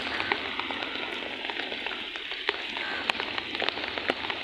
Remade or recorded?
recorded